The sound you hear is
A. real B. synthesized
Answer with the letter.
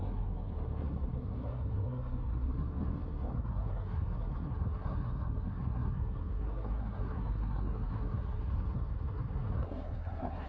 B